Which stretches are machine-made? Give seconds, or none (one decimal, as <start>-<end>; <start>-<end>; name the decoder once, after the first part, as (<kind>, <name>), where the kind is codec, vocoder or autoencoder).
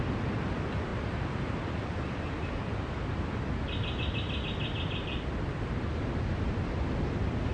none